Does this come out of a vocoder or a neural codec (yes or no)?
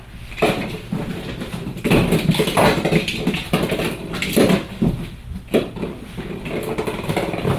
no